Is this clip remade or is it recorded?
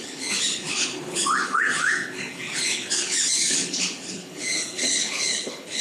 remade